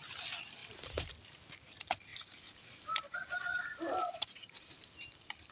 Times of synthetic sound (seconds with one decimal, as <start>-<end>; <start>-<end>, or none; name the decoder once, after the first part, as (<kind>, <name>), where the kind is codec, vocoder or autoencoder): 0.6-1.1 (vocoder, BigVGAN v2); 2.1-5.5